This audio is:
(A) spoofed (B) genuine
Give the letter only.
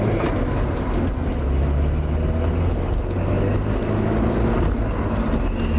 B